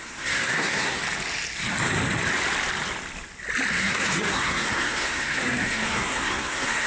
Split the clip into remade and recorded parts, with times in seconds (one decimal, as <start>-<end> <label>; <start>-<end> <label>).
0.0-1.0 remade; 1.0-3.7 recorded; 3.7-6.9 remade